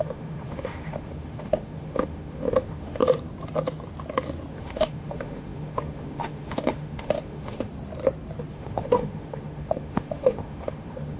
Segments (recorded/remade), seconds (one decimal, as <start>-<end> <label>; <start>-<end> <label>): 0.0-3.0 remade; 3.0-4.5 recorded; 4.5-7.7 remade; 7.7-8.5 recorded; 8.5-11.2 remade